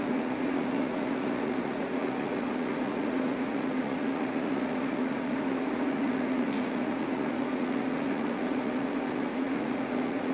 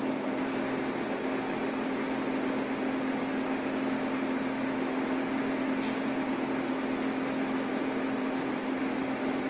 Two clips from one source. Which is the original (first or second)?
second